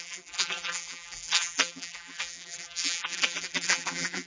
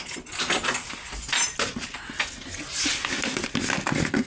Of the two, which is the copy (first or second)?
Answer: first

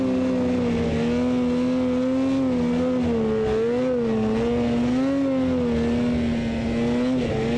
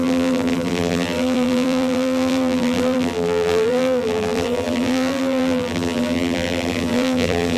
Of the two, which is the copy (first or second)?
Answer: second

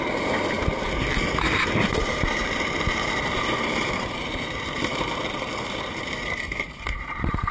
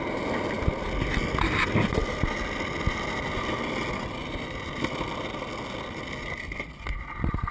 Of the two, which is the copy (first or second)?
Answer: first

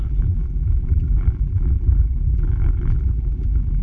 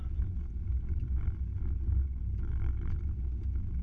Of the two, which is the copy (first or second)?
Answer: first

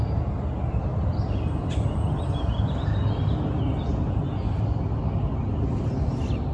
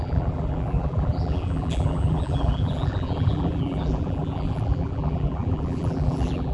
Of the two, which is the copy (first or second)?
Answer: second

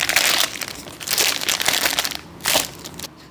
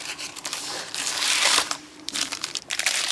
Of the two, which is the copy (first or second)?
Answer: second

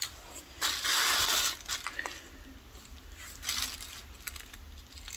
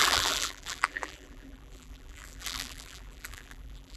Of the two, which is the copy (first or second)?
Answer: second